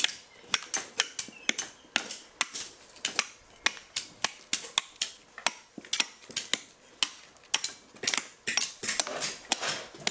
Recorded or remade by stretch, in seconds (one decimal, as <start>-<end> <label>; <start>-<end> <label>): 0.0-10.1 recorded